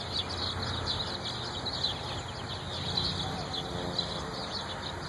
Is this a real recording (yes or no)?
yes